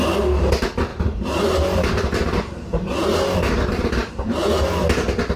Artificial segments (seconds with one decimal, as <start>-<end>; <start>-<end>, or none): 0.9-4.1